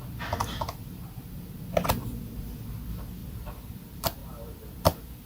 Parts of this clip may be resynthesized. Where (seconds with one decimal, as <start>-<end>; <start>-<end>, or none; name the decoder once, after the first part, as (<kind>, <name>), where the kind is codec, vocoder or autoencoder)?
3.2-3.8 (vocoder, BigVGAN v2); 4.2-5.3